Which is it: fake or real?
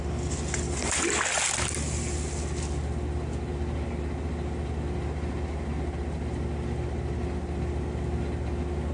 real